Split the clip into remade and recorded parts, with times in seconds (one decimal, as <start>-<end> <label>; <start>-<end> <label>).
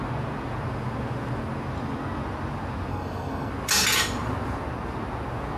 0.0-2.9 recorded; 2.9-3.5 remade; 3.5-5.6 recorded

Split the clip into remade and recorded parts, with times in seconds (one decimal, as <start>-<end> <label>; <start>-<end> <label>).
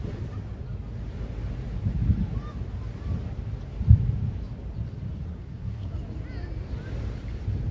0.0-5.3 recorded; 5.3-5.9 remade; 5.9-7.7 recorded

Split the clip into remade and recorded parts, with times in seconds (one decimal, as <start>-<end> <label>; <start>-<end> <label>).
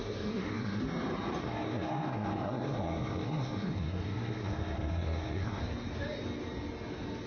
0.0-0.8 remade; 0.8-1.4 recorded; 1.4-5.6 remade; 5.6-7.3 recorded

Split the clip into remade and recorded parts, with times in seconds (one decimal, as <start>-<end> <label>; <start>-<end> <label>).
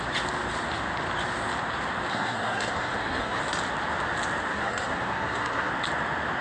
0.0-2.1 recorded; 2.1-3.4 remade; 3.4-4.5 recorded; 4.5-5.7 remade; 5.7-6.4 recorded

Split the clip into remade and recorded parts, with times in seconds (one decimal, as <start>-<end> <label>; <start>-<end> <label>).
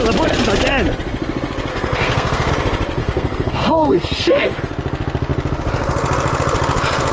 0.0-1.7 recorded; 1.7-2.5 remade; 2.5-3.0 recorded; 3.0-4.6 remade; 4.6-7.1 recorded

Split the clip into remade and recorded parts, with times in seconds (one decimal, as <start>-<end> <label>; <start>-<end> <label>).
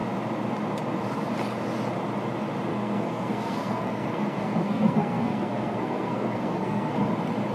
0.0-2.7 recorded; 2.7-7.1 remade; 7.1-7.5 recorded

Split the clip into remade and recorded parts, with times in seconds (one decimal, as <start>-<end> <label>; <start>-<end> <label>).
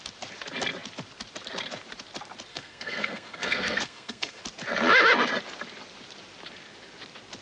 0.0-2.5 recorded; 2.5-4.4 remade; 4.4-7.4 recorded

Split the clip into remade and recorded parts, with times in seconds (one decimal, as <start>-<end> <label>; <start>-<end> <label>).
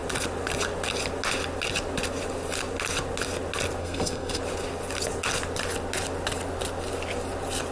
0.0-3.8 recorded; 3.8-4.4 remade; 4.4-7.7 recorded